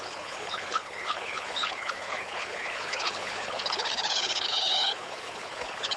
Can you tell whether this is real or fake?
fake